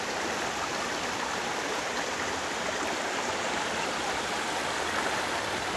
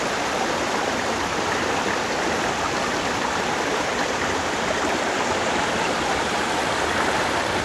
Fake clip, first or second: second